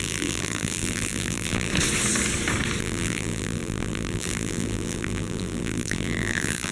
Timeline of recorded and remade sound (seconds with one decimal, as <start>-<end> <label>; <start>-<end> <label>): 0.0-1.7 remade; 1.7-2.8 recorded; 2.8-6.7 remade